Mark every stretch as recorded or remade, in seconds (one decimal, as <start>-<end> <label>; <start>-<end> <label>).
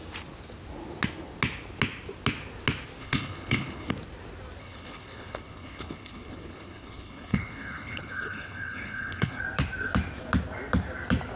0.0-3.0 recorded; 3.0-3.9 remade; 3.9-4.6 recorded; 4.6-9.4 remade; 9.4-11.4 recorded